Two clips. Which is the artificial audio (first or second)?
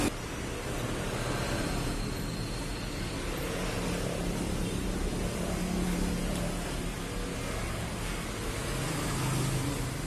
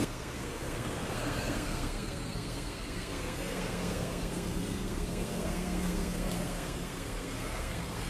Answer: second